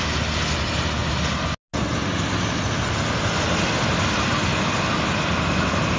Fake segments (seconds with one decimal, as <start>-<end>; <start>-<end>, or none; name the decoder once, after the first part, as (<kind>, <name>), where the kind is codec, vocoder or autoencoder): none